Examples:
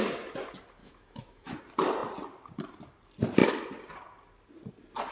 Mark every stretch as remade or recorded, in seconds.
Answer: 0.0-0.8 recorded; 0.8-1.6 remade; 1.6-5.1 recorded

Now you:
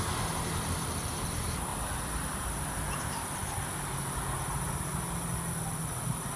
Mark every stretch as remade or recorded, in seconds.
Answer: 0.0-1.7 recorded; 1.7-2.5 remade; 2.5-3.4 recorded; 3.4-4.0 remade; 4.0-6.4 recorded

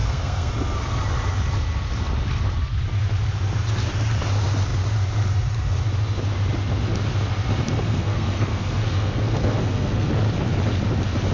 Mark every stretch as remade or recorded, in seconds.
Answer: 0.0-0.5 remade; 0.5-7.8 recorded; 7.8-10.1 remade; 10.1-11.3 recorded